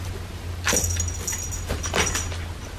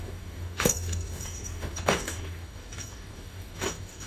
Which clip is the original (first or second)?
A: first